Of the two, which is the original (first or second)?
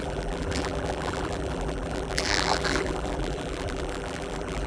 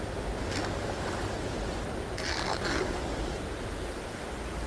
second